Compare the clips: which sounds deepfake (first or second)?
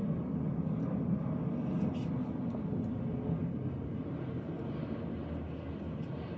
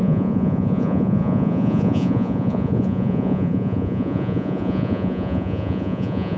second